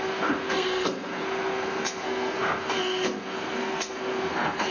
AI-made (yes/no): yes